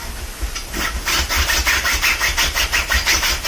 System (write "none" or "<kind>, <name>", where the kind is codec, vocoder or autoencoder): none